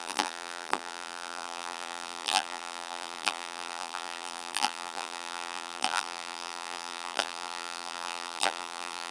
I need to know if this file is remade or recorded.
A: remade